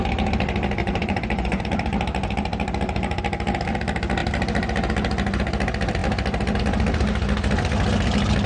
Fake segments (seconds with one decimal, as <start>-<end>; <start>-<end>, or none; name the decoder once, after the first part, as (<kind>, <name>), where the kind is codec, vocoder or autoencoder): 0.8-1.6 (vocoder, Vocos)